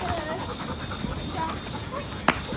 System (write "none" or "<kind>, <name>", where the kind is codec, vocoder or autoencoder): none